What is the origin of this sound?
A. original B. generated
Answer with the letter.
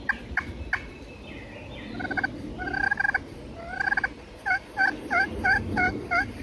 A